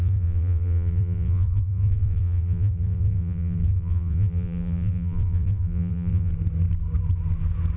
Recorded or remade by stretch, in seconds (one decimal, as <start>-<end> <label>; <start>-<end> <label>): 0.0-6.3 remade; 6.3-7.8 recorded